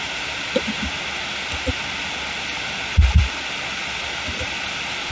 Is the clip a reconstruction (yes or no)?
no